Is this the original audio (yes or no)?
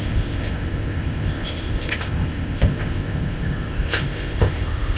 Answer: no